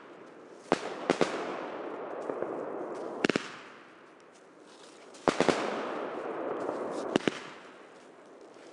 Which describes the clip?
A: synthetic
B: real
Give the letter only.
B